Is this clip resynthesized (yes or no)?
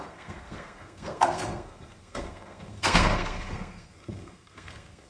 yes